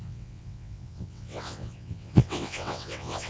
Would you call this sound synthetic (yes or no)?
yes